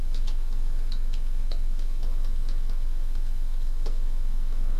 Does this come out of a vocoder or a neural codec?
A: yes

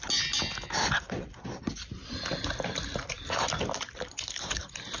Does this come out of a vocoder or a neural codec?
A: no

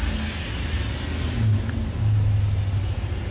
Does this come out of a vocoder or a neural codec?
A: no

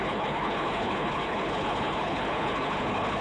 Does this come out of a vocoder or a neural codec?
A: yes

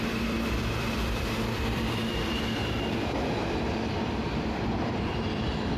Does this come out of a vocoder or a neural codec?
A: yes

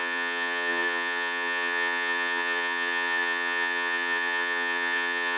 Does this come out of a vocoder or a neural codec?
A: yes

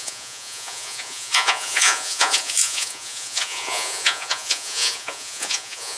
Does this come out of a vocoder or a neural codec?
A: yes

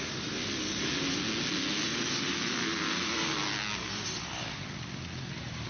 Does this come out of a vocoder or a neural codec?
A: no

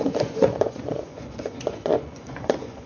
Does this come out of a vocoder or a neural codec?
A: yes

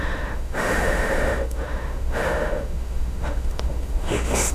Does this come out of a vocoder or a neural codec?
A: yes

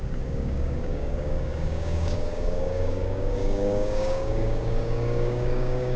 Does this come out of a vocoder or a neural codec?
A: yes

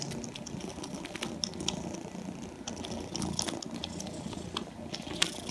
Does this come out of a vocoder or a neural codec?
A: no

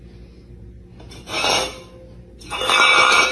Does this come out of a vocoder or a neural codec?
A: no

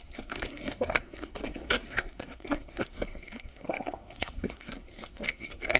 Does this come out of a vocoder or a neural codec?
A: yes